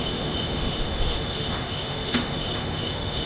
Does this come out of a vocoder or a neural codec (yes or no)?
yes